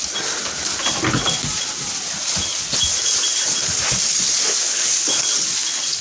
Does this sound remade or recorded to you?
recorded